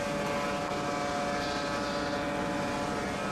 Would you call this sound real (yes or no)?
yes